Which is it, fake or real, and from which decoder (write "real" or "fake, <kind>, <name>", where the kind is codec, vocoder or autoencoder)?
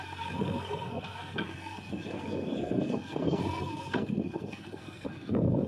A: fake, codec, SNAC